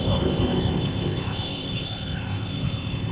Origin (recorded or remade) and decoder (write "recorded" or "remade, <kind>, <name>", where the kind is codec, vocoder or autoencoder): remade, codec, ZipCodec